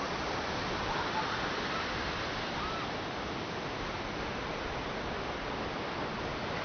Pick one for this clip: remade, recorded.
recorded